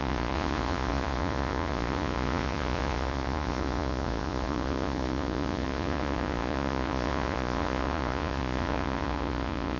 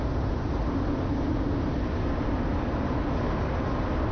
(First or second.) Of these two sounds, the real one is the second